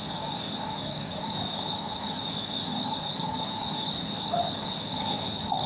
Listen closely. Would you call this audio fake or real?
fake